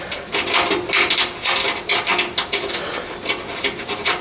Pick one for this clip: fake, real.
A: real